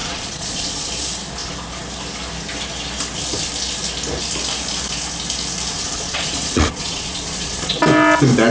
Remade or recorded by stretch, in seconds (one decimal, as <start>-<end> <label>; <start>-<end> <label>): 0.0-0.9 remade; 0.9-5.7 recorded; 5.7-7.8 remade; 7.8-8.5 recorded